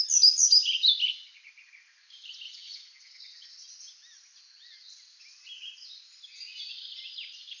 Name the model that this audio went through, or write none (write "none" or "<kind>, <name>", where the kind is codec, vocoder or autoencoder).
none